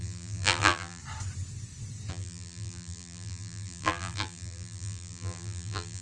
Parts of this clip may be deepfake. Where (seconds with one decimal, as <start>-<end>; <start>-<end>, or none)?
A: 0.0-1.0; 2.1-6.0